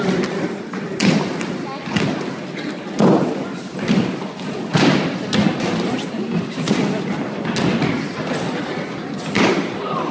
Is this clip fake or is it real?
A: real